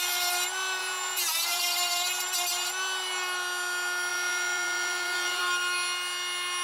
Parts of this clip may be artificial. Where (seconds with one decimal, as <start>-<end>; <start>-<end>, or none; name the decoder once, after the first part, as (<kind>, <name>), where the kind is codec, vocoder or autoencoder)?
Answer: 0.8-1.6 (vocoder, Vocos); 4.1-5.4